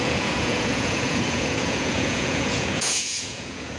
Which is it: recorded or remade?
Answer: remade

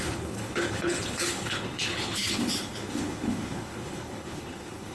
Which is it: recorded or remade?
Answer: remade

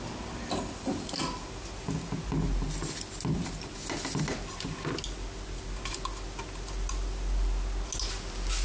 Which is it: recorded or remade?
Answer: recorded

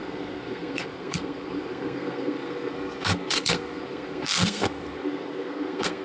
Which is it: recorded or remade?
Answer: remade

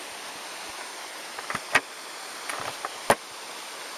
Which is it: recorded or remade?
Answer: recorded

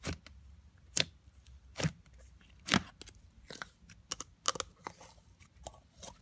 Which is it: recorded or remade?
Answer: recorded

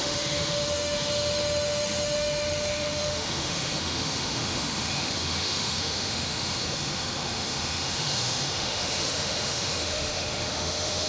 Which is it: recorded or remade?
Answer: remade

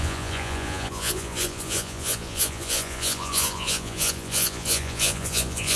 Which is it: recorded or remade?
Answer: remade